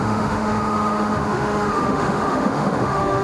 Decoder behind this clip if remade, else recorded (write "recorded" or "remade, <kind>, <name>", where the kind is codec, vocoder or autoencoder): remade, autoencoder, DAC-VAE